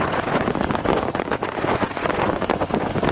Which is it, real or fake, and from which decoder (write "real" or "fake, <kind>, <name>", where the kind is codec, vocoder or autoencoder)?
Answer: fake, vocoder, Vocos